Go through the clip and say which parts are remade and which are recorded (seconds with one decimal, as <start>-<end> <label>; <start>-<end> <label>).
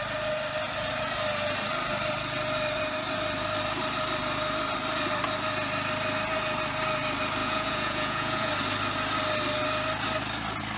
0.0-7.4 recorded; 7.4-8.5 remade; 8.5-10.8 recorded